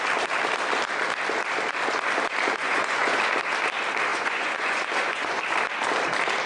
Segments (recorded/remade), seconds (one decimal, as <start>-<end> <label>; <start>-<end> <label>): 0.0-2.6 recorded; 2.6-3.2 remade; 3.2-4.1 recorded; 4.1-5.4 remade; 5.4-6.5 recorded